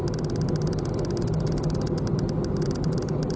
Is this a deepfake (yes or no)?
no